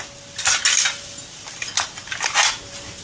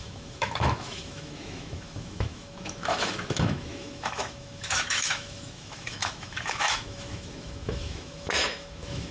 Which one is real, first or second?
first